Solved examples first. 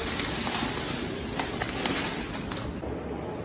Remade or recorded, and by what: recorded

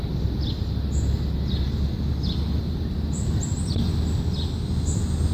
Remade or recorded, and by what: recorded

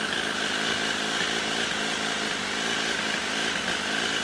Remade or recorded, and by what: recorded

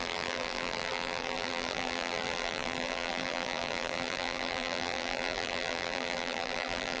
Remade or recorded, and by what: remade, vocoder, BigVGAN v2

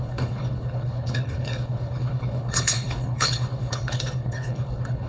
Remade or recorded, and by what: remade, codec, HILCodec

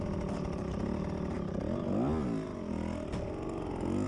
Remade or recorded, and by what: recorded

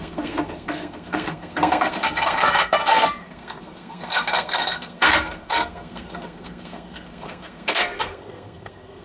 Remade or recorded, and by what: remade, codec, SNAC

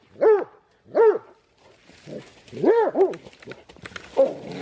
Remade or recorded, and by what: recorded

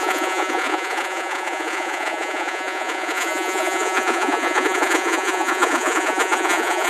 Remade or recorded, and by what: remade, vocoder, Vocos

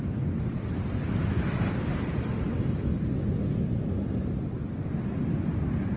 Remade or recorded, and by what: recorded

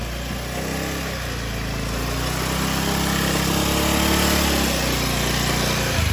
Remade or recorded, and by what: recorded